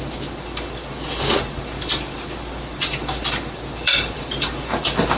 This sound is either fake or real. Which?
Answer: fake